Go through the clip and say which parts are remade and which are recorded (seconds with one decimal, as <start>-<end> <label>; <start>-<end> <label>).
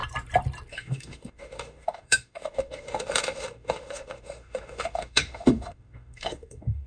0.0-0.7 recorded; 0.7-6.9 remade